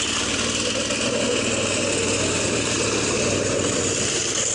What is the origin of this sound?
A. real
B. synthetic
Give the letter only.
A